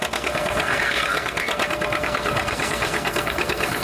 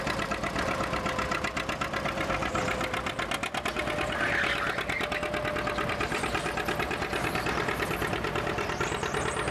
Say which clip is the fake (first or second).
first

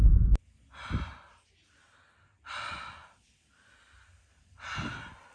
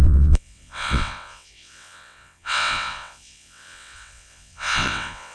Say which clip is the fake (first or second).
second